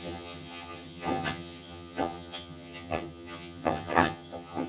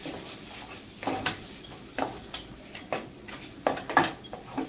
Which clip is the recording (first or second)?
second